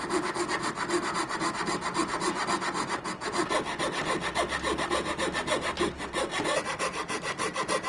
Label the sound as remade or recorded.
recorded